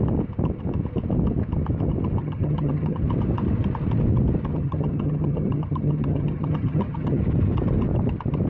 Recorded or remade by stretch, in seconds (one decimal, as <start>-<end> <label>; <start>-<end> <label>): 0.0-2.2 recorded; 2.2-3.0 remade; 3.0-4.5 recorded; 4.5-7.2 remade; 7.2-8.5 recorded